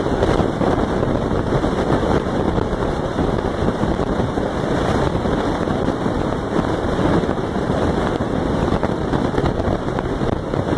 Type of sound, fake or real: fake